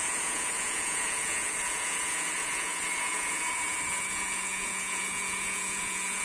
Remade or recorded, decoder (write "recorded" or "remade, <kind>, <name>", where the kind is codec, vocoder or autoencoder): remade, vocoder, Vocos